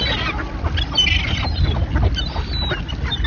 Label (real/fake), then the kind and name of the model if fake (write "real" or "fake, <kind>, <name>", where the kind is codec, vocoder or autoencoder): real